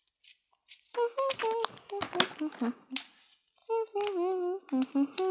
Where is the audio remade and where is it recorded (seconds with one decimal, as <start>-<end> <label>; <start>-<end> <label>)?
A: 0.0-3.2 recorded; 3.2-3.6 remade; 3.6-5.3 recorded